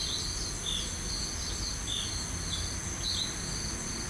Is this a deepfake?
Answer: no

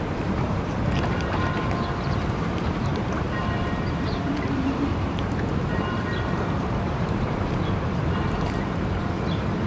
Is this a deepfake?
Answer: yes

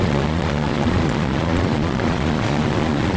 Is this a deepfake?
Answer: yes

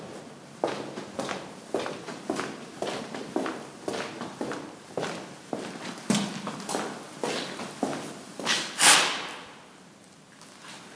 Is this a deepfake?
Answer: no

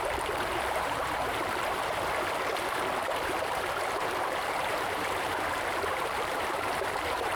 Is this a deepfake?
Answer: yes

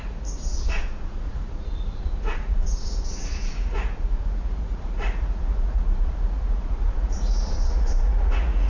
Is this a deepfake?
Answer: yes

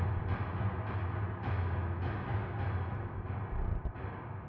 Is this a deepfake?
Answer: no